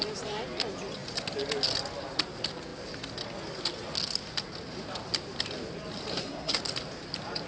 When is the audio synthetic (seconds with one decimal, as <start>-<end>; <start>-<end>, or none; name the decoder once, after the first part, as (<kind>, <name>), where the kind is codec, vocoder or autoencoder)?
6.1-6.6 (codec, SNAC)